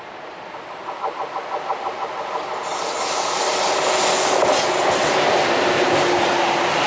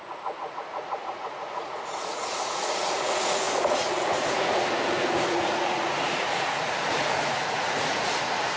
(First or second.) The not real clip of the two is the second